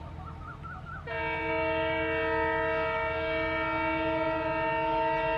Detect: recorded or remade recorded